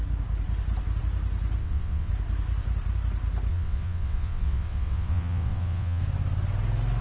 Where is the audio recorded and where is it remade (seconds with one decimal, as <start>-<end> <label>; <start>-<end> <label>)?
0.0-1.6 recorded; 1.6-2.1 remade; 2.1-3.5 recorded; 3.5-6.0 remade; 6.0-7.0 recorded